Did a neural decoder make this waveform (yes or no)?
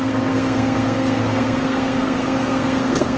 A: yes